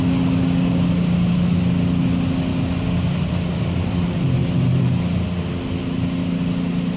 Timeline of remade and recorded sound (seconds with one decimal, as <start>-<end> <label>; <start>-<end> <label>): 0.0-5.8 recorded; 5.8-7.0 remade